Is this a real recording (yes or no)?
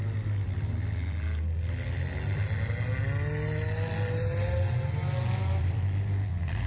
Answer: yes